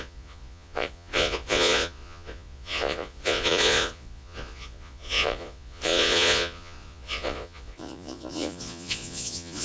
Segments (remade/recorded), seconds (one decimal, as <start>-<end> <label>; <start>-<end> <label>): 0.0-9.6 remade